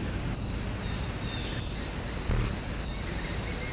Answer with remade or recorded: recorded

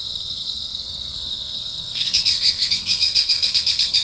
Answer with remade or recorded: remade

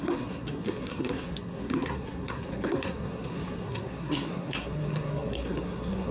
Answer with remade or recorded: remade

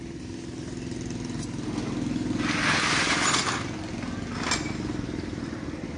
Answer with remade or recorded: recorded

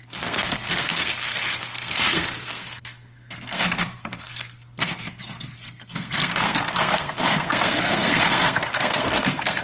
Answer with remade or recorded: remade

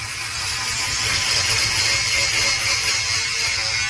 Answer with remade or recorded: recorded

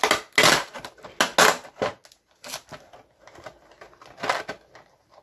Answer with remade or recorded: recorded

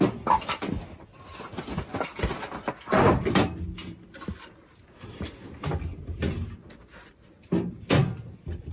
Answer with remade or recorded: recorded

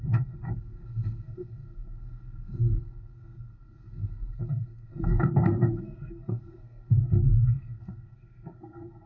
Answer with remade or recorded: remade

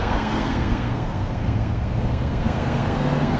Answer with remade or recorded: remade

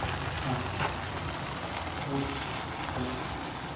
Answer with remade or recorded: recorded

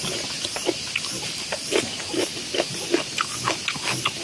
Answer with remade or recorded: recorded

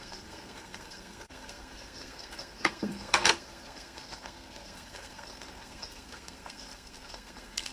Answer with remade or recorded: remade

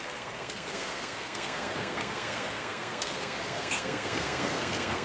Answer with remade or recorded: remade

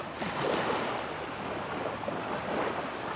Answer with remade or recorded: recorded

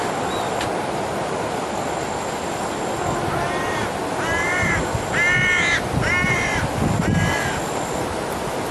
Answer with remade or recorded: recorded